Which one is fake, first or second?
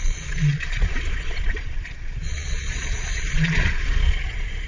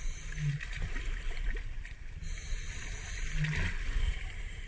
first